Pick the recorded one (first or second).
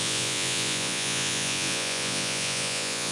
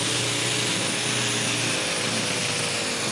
second